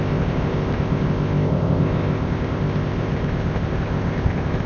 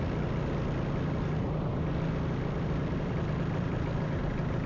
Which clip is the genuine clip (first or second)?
second